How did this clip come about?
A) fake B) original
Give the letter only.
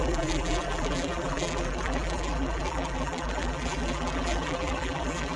A